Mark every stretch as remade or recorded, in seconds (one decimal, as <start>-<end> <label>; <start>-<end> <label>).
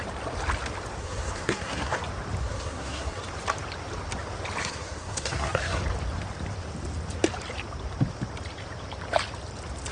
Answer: 0.0-1.0 recorded; 1.0-2.0 remade; 2.0-2.4 recorded; 2.4-3.2 remade; 3.2-4.6 recorded; 4.6-5.8 remade; 5.8-9.9 recorded